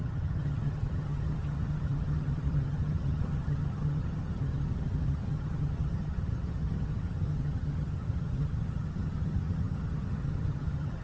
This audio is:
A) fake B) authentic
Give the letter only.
A